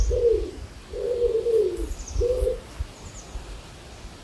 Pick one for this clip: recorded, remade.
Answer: recorded